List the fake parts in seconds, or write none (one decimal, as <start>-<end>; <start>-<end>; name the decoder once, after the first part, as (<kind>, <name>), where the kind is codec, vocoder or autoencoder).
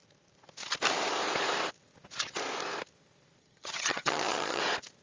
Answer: 3.4-4.6 (vocoder, HiFi-GAN)